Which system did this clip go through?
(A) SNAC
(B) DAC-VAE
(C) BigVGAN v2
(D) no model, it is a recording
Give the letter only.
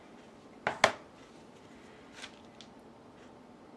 D